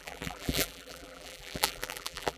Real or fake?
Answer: fake